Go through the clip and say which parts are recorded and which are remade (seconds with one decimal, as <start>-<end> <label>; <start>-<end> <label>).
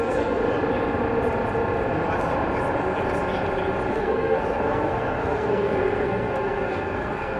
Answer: 0.0-0.4 remade; 0.4-3.9 recorded; 3.9-7.4 remade